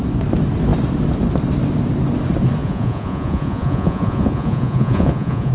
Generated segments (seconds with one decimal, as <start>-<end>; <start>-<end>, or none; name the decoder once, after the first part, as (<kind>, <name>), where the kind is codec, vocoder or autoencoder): 2.6-5.5 (vocoder, Vocos)